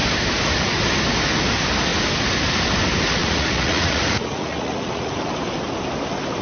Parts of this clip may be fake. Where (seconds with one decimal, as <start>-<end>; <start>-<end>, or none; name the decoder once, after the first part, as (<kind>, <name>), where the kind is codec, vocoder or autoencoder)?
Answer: 3.2-5.1 (vocoder, Vocos)